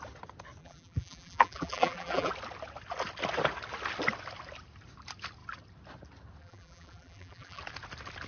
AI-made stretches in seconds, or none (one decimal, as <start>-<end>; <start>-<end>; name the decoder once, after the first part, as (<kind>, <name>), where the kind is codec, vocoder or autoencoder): 0.6-2.3 (vocoder, BigVGAN v2); 6.4-7.6